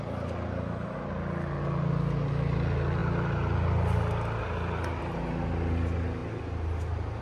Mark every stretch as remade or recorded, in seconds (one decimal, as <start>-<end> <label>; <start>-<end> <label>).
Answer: 0.0-7.2 recorded